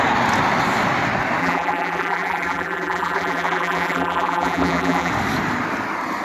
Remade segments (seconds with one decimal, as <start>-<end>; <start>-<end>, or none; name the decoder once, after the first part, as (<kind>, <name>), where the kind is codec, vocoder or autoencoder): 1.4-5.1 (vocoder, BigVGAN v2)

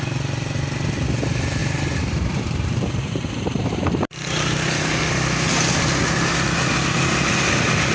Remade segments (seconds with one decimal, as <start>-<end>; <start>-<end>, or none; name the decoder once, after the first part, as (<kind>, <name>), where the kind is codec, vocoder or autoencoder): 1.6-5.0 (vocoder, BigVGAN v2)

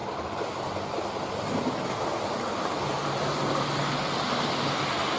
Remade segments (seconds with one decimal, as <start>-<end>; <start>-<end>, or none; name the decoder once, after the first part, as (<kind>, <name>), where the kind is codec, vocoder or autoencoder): none

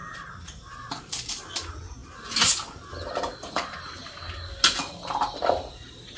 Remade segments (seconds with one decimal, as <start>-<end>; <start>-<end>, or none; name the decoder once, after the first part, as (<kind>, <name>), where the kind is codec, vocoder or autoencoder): 0.0-2.0 (vocoder, BigVGAN v2); 5.7-6.2